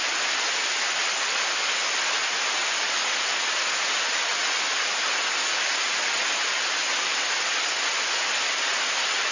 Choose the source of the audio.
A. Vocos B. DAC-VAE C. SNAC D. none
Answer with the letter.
D